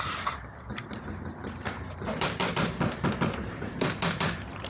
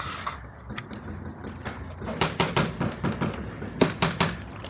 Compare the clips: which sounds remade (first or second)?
first